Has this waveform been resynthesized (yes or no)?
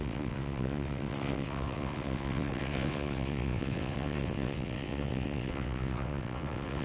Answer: yes